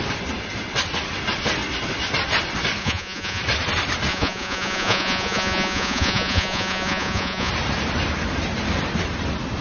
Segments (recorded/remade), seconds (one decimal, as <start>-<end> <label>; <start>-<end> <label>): 0.0-2.8 recorded; 2.8-3.4 remade; 3.4-4.1 recorded; 4.1-7.5 remade; 7.5-9.6 recorded